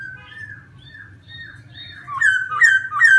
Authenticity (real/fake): real